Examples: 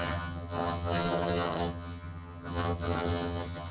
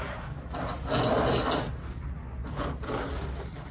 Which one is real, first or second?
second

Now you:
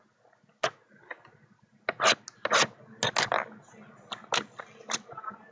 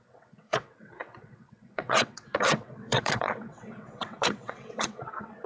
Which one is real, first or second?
first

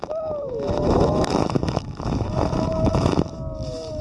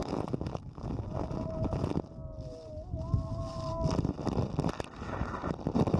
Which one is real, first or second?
second